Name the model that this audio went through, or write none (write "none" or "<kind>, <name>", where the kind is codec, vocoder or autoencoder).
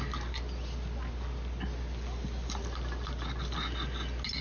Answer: none